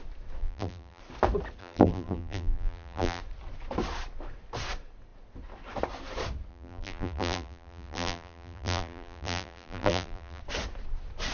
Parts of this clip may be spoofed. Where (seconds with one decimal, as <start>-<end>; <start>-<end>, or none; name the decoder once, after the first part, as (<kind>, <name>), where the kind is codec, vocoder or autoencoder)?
0.4-1.0 (vocoder, BigVGAN v2); 1.6-3.2; 6.5-10.4